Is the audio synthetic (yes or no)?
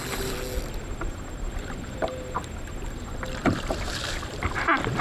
no